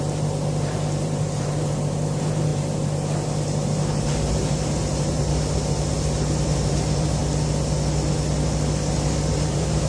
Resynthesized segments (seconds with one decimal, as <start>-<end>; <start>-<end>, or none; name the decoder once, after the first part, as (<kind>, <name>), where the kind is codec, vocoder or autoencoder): 0.0-7.2 (vocoder, BigVGAN v2); 9.3-9.9